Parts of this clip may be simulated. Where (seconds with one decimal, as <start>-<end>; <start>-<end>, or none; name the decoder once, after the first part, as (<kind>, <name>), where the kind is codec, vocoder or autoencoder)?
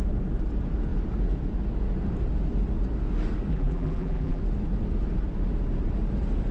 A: 3.5-4.4 (vocoder, BigVGAN v2)